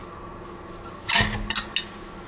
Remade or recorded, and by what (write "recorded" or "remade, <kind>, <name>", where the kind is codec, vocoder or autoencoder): recorded